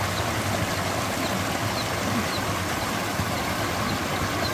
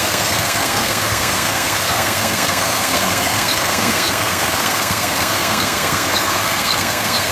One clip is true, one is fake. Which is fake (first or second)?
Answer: second